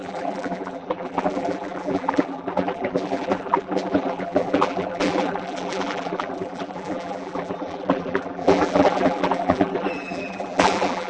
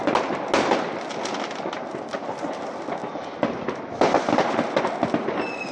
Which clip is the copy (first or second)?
first